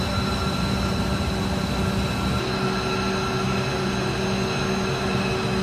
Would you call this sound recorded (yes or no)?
yes